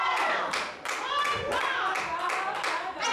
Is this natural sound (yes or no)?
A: yes